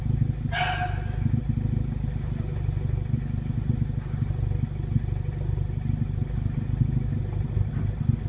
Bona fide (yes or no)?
yes